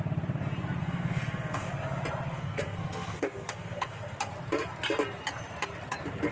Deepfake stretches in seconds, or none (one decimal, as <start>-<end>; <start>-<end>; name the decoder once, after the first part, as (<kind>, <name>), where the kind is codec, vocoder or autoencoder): 0.8-1.7 (codec, SNAC); 2.3-4.3